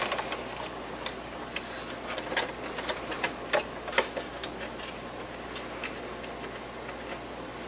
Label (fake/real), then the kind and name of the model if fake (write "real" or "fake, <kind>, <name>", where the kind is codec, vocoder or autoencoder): real